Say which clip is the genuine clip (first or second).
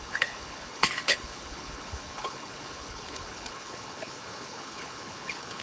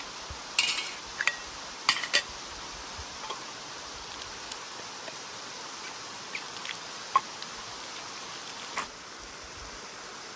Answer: second